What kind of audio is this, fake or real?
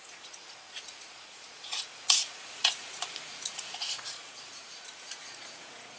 fake